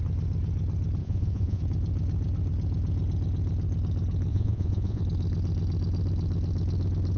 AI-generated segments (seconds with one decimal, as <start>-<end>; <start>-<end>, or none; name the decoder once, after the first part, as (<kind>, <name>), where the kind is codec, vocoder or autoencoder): 1.0-1.6 (vocoder, Vocos); 4.3-5.0